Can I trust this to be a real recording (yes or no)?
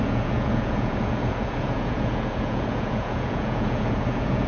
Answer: no